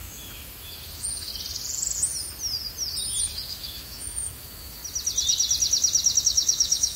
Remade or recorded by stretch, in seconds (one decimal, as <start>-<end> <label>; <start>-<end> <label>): 0.0-1.3 remade; 1.3-3.2 recorded; 3.2-4.8 remade; 4.8-6.2 recorded; 6.2-7.0 remade